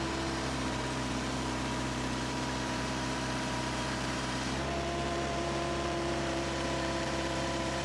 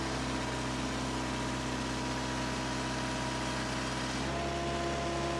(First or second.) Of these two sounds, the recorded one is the second